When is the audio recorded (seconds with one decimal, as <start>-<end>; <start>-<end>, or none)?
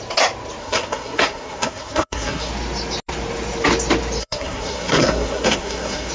0.0-0.6; 2.5-4.2